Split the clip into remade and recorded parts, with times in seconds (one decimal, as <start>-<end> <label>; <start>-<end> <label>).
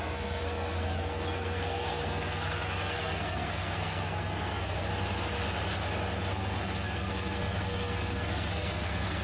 0.0-4.9 remade; 4.9-6.3 recorded; 6.3-9.2 remade